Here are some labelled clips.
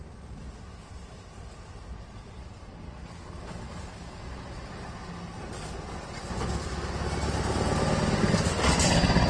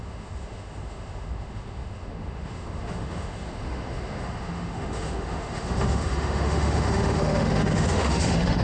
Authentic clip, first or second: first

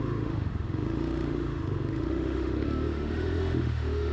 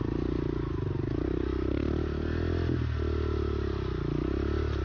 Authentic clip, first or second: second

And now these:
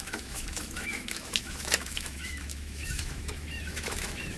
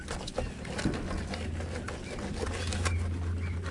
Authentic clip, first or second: second